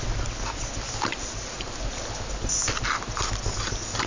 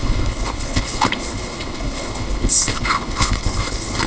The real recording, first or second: first